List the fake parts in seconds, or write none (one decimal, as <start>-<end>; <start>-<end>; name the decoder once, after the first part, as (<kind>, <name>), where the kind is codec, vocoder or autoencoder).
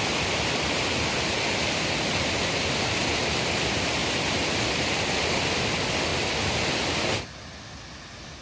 none